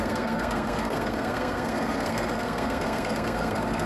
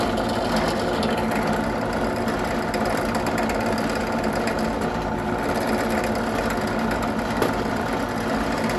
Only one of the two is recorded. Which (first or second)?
second